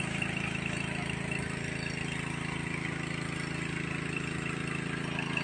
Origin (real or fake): real